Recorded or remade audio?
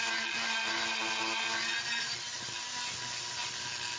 recorded